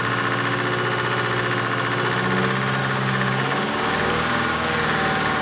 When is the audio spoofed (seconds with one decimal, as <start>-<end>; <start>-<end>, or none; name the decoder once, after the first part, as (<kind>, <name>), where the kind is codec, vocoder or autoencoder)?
2.8-5.4 (codec, DAC)